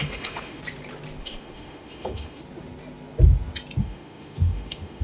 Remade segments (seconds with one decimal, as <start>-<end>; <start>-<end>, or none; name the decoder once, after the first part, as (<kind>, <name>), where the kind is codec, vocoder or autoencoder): 0.0-0.6 (autoencoder, DAC-VAE); 1.2-2.4; 3.8-5.0

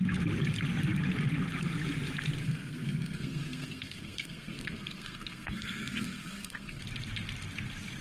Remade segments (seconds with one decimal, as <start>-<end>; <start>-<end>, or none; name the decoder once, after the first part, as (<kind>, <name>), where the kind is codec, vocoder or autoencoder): 2.4-6.8 (codec, SNAC)

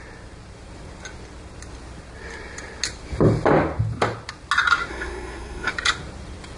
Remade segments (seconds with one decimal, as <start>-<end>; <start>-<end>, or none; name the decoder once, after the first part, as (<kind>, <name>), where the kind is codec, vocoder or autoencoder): 4.9-5.7 (codec, SNAC)